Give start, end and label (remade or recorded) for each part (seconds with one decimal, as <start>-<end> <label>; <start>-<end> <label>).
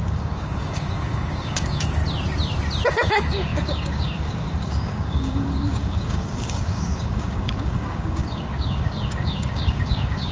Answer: 0.0-2.0 remade; 2.0-2.9 recorded; 2.9-10.3 remade